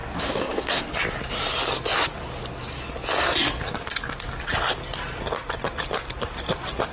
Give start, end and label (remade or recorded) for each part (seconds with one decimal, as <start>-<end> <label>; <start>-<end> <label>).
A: 0.0-0.9 remade; 0.9-6.9 recorded